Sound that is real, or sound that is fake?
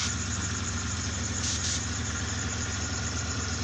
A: fake